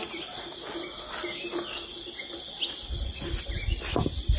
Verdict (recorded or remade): recorded